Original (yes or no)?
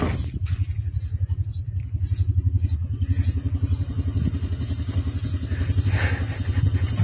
yes